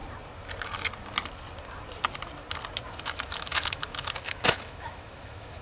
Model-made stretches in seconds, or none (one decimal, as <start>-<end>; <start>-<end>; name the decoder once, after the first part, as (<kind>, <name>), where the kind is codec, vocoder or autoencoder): 3.0-5.6 (autoencoder, DAC-VAE)